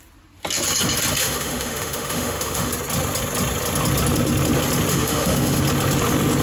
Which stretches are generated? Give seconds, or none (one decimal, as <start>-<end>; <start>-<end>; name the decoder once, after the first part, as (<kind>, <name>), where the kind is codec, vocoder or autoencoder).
1.2-2.7 (autoencoder, DAC-VAE); 4.9-5.6